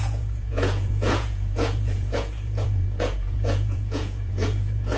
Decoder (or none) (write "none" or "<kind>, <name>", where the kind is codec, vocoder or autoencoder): vocoder, Vocos